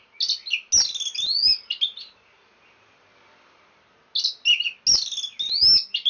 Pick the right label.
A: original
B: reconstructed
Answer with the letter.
A